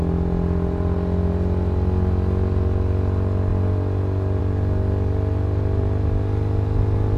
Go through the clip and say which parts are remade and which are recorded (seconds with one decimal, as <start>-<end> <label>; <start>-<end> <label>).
0.0-7.2 recorded